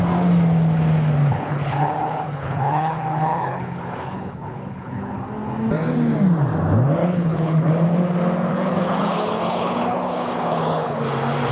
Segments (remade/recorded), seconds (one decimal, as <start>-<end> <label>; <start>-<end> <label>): 0.0-1.3 recorded; 1.3-5.2 remade; 5.2-7.0 recorded; 7.0-7.7 remade; 7.7-8.5 recorded; 8.5-11.0 remade; 11.0-11.5 recorded